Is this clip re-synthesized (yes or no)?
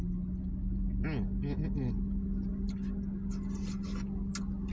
no